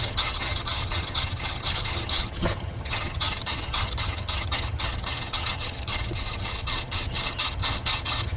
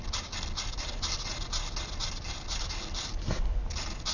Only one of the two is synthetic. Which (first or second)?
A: first